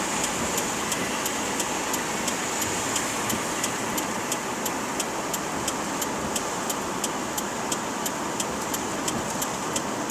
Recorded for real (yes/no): yes